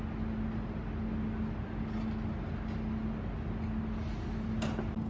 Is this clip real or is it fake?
real